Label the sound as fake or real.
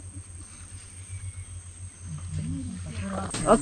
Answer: real